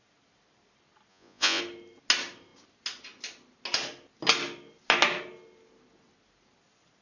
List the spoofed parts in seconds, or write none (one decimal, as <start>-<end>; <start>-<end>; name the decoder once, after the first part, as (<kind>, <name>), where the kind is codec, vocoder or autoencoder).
1.1-1.6 (vocoder, Vocos)